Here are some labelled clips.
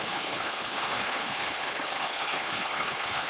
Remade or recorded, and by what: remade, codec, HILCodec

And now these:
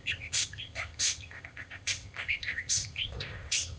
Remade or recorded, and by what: remade, codec, ZipCodec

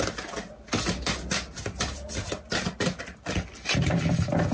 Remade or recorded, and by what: recorded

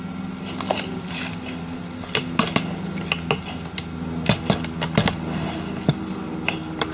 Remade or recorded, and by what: recorded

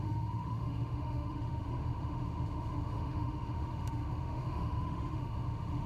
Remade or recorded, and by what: remade, autoencoder, DAC-VAE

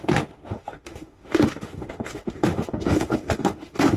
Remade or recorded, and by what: remade, autoencoder, DAC-VAE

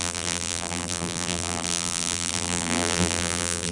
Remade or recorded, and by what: remade, vocoder, BigVGAN v2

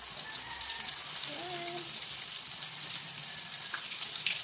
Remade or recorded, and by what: recorded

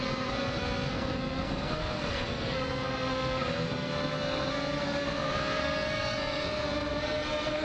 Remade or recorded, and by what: remade, codec, SNAC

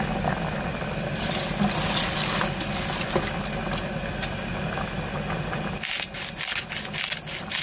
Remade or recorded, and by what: recorded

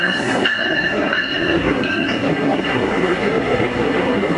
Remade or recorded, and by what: remade, codec, SNAC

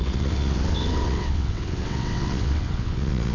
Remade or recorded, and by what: remade, vocoder, WaveNeXt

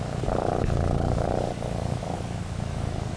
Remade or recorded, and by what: remade, codec, DAC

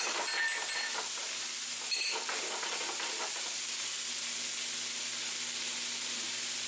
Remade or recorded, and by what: recorded